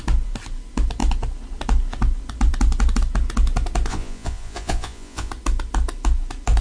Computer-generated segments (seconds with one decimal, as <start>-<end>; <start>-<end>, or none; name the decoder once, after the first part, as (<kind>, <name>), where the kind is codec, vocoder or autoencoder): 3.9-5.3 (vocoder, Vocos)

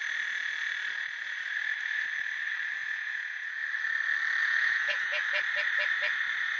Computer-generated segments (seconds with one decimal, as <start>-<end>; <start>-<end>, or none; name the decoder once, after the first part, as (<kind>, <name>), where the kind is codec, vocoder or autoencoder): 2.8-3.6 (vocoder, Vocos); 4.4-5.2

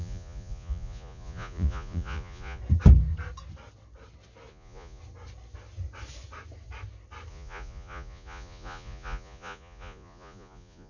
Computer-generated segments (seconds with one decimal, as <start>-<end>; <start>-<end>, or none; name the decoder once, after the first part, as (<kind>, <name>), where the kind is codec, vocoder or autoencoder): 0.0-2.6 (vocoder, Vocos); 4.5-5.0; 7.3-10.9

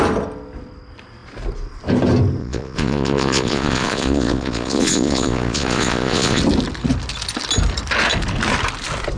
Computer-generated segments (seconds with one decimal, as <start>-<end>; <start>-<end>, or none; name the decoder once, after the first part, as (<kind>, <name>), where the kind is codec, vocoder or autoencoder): 2.4-6.4 (vocoder, Vocos)

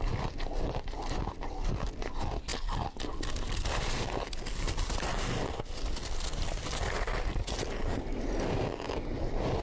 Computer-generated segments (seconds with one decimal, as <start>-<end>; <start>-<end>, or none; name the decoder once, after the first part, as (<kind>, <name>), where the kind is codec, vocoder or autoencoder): none

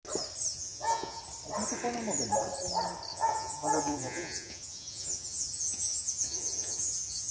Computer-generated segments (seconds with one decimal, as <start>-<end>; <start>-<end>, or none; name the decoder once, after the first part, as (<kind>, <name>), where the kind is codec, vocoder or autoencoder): 0.5-1.2 (vocoder, Vocos); 3.1-7.3

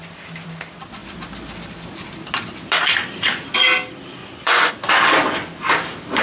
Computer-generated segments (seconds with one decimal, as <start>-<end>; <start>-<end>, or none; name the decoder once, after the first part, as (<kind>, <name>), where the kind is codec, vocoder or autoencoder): 4.2-4.7 (vocoder, Vocos)